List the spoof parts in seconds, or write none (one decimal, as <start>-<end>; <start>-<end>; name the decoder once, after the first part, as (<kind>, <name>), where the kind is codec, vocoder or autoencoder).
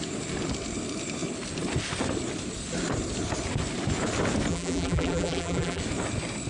4.5-5.8 (vocoder, BigVGAN v2)